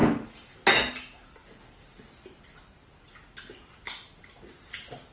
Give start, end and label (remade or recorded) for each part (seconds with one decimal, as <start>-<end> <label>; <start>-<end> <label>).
0.0-5.1 recorded